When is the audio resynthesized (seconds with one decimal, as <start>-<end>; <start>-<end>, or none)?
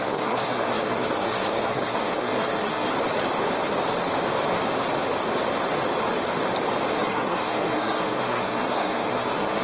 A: 0.0-2.9; 6.9-9.6